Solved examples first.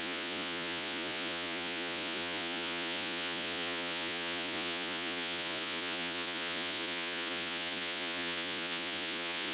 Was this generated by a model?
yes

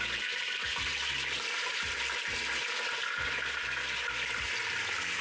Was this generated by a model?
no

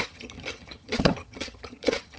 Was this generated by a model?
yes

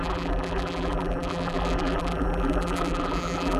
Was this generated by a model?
yes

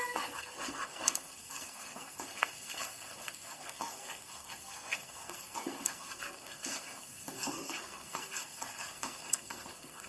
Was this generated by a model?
yes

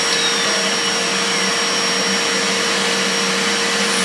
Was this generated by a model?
no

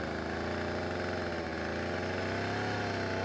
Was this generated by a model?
no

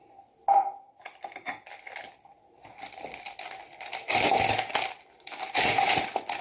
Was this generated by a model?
no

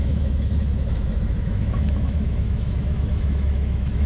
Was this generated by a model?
yes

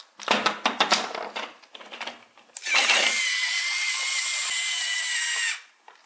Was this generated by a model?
no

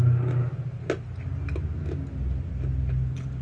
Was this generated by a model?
no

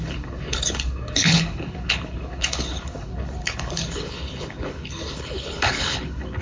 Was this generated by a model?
yes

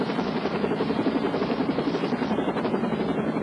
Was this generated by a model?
yes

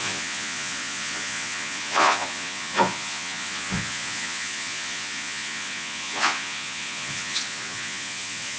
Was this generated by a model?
yes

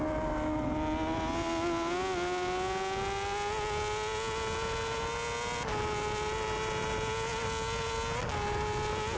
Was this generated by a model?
no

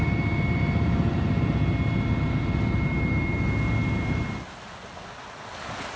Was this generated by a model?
no